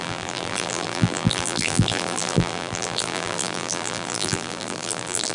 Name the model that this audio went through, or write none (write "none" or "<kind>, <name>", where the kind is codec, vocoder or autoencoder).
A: vocoder, BigVGAN v2